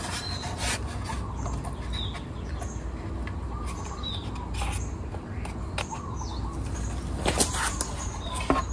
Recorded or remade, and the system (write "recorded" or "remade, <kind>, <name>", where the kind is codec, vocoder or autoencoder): recorded